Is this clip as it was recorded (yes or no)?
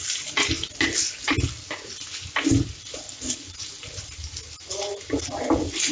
yes